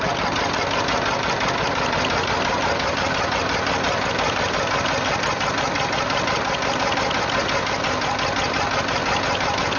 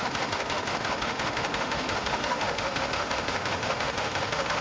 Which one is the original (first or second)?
first